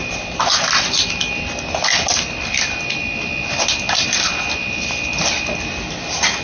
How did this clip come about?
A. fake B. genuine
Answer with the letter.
B